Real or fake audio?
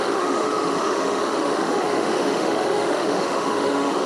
fake